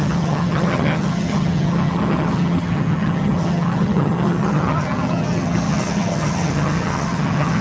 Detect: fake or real fake